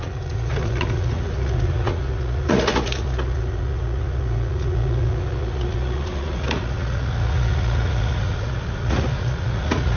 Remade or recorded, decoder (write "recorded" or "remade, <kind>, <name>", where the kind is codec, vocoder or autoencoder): remade, vocoder, Vocos